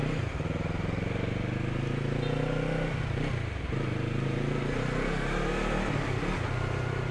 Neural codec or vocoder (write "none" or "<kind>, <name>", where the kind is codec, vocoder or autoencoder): none